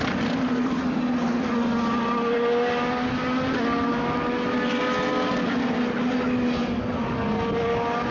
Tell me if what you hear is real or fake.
real